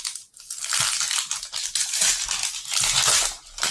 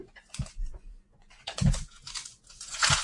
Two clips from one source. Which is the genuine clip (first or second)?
first